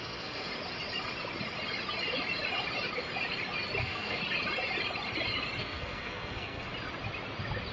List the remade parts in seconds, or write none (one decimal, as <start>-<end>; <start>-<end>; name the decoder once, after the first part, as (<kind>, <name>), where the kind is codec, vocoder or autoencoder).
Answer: 0.0-0.5 (codec, SNAC); 3.8-4.2; 5.6-6.7